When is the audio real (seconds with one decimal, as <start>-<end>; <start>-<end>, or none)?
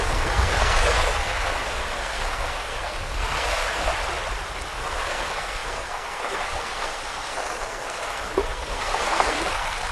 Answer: 3.9-4.7